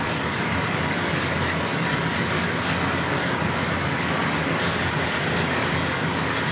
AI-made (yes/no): yes